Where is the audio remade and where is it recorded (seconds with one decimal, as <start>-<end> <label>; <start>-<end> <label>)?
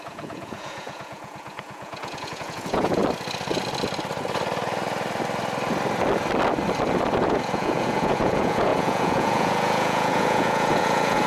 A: 0.0-3.0 remade; 3.0-7.2 recorded; 7.2-11.3 remade